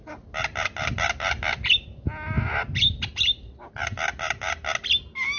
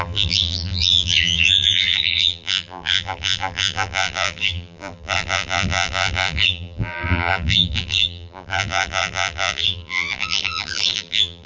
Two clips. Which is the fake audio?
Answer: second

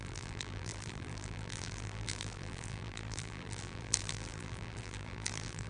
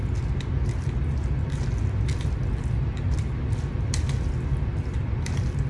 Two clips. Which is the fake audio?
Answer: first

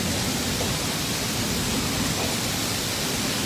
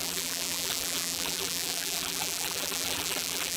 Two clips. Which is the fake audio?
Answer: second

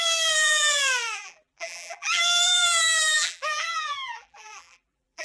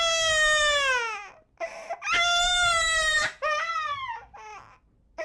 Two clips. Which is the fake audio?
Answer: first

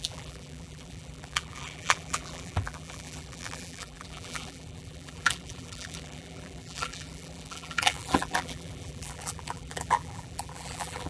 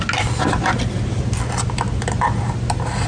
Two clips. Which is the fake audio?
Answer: first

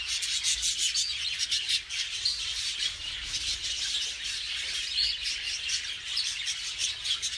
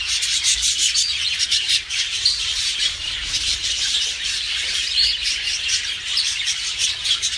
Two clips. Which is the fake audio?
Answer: second